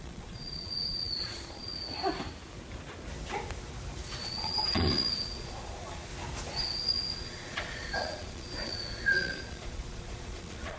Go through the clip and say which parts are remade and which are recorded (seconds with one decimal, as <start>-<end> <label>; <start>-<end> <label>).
0.0-1.7 remade; 1.7-4.2 recorded; 4.2-6.1 remade; 6.1-6.6 recorded; 6.6-10.8 remade